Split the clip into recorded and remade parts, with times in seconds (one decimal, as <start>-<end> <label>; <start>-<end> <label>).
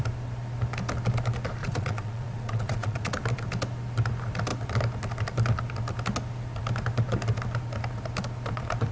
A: 0.0-1.6 recorded; 1.6-3.1 remade; 3.1-8.9 recorded